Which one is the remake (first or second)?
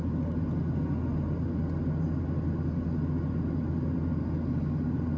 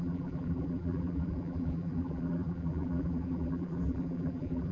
second